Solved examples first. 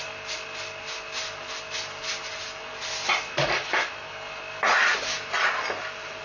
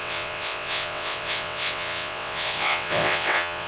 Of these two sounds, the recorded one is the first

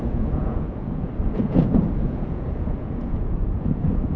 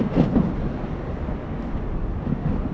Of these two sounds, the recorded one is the second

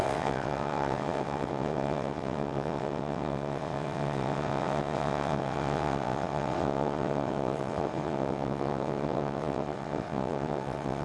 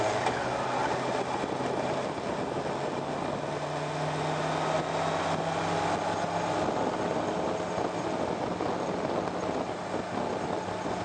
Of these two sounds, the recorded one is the second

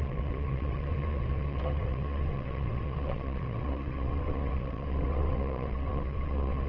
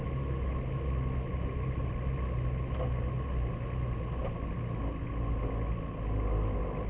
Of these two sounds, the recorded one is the second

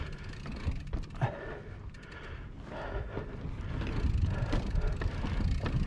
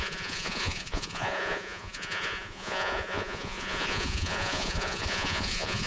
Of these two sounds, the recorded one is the first